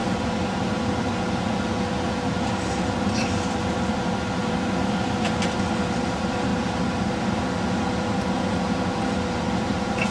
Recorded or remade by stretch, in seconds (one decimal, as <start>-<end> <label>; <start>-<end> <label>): 0.0-0.6 remade; 0.6-2.3 recorded; 2.3-3.4 remade; 3.4-6.5 recorded; 6.5-7.2 remade; 7.2-10.1 recorded